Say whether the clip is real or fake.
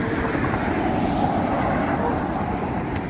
real